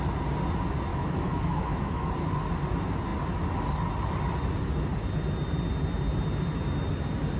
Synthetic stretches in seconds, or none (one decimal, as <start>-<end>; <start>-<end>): 0.9-2.1